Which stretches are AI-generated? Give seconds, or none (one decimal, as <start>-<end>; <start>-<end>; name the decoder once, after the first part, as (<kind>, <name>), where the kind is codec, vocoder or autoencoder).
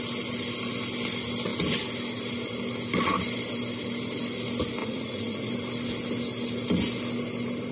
4.8-5.5 (vocoder, Vocos)